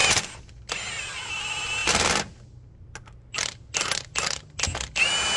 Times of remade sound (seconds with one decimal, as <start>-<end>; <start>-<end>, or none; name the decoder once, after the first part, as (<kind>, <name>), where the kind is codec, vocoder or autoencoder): none